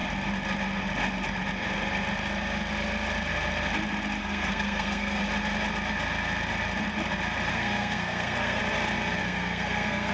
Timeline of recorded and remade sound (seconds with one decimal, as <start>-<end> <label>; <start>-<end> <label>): 0.0-4.2 recorded; 4.2-5.2 remade; 5.2-7.5 recorded; 7.5-8.6 remade; 8.6-9.2 recorded; 9.2-10.1 remade